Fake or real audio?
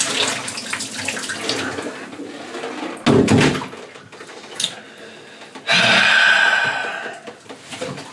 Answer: real